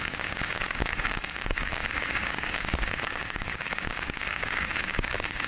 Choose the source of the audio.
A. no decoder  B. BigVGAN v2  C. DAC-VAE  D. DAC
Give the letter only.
D